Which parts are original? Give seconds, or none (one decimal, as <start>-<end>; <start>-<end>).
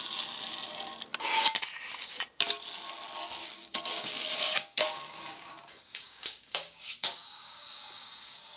0.0-3.4